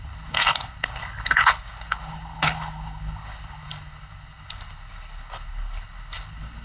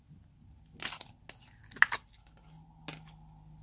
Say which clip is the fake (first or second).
first